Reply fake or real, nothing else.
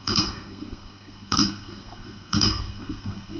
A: fake